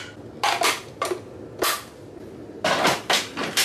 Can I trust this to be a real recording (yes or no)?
yes